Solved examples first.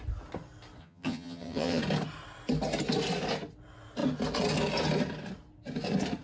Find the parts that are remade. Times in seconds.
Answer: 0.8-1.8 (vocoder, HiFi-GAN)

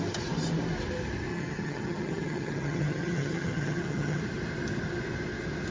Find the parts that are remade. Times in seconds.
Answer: 1.3-4.2 (vocoder, HiFi-GAN)

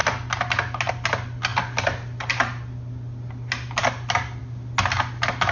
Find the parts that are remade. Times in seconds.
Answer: none